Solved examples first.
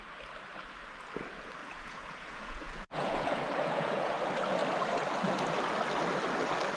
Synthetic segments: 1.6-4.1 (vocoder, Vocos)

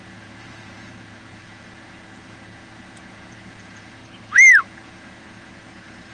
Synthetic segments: 0.0-4.0 (vocoder, Vocos); 4.6-6.1